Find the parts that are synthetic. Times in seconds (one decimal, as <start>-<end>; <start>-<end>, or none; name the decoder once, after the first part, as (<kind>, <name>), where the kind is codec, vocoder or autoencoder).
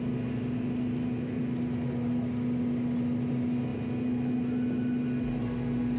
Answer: none